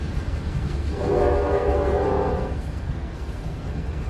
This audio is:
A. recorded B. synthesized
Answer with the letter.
B